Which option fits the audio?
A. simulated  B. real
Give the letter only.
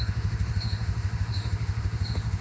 A